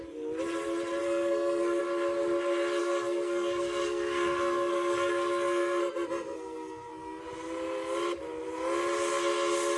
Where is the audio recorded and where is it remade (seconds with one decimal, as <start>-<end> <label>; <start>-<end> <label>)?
0.0-1.0 recorded; 1.0-1.8 remade; 1.8-2.8 recorded; 2.8-7.2 remade; 7.2-9.8 recorded